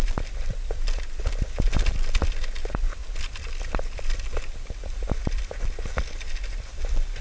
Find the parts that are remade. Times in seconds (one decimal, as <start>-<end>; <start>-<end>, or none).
none